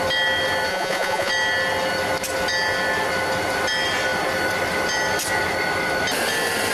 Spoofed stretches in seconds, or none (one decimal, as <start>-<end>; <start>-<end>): 0.7-1.3